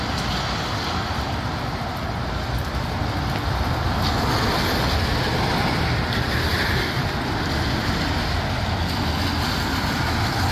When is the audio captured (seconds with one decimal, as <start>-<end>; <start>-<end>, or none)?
0.0-6.5; 8.1-10.5